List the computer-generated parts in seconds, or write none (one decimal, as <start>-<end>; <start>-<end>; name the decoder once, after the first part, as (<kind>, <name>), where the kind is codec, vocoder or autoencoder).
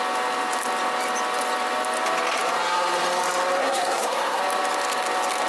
3.6-4.4 (codec, SNAC)